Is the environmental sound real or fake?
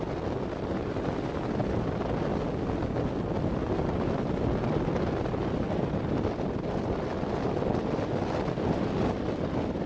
real